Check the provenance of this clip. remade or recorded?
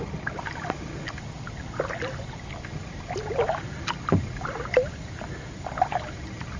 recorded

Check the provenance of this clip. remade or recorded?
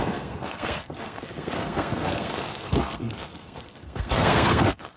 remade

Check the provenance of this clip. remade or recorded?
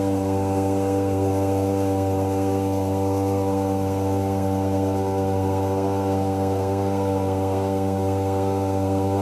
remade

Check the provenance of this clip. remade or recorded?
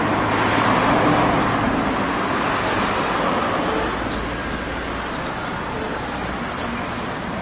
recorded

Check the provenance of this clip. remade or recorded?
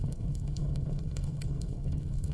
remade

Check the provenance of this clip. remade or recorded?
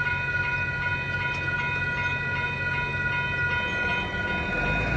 recorded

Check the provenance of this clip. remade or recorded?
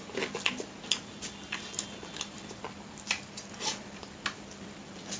recorded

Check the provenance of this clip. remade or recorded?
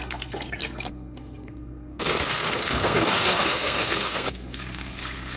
remade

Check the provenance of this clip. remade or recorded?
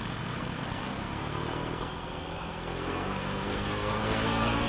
remade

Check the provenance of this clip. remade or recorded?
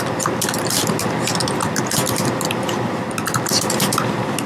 recorded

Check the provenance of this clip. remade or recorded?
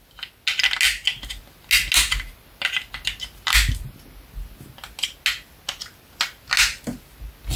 recorded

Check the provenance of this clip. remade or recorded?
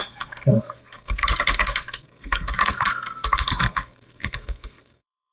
remade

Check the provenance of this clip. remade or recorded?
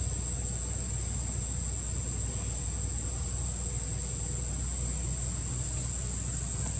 recorded